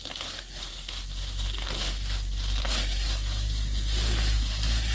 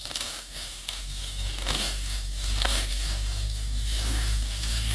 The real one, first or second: first